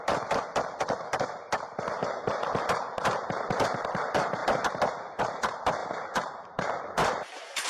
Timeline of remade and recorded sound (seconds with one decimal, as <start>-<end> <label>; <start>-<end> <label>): 0.0-4.4 remade; 4.4-5.2 recorded; 5.2-7.7 remade